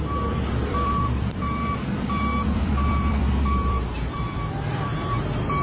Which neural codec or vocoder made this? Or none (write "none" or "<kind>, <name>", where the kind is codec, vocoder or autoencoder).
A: vocoder, BigVGAN v2